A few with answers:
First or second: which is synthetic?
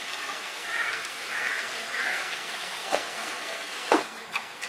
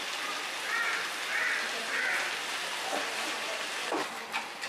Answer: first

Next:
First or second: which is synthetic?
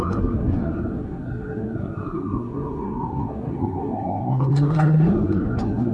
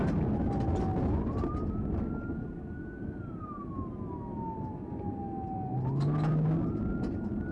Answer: first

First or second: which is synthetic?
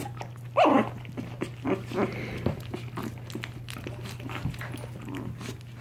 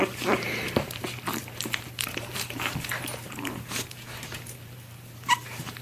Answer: second